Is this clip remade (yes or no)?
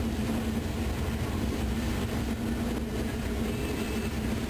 no